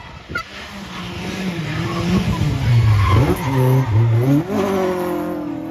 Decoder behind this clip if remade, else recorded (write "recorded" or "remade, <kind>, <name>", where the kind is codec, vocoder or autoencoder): recorded